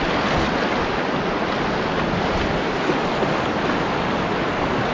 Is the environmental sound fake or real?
real